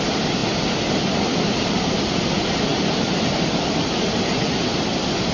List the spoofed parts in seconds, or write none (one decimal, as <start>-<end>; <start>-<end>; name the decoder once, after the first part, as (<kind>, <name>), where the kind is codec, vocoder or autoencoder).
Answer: none